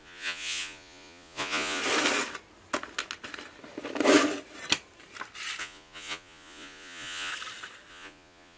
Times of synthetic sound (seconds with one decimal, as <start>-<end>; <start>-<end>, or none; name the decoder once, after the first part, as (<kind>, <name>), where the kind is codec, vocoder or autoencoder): 0.0-1.8 (vocoder, Vocos); 5.6-7.3; 7.9-8.6